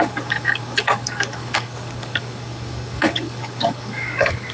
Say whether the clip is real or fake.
fake